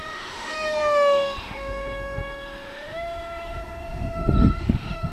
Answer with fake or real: fake